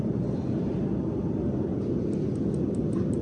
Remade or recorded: recorded